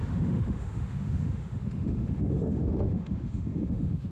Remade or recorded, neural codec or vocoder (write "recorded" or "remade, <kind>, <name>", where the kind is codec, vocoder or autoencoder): remade, autoencoder, DAC-VAE